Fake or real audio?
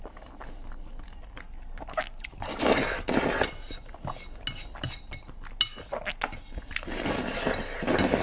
real